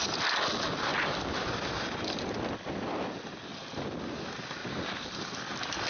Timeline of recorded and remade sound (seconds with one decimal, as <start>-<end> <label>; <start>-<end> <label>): 0.0-0.9 recorded; 0.9-2.8 remade; 2.8-4.6 recorded; 4.6-5.9 remade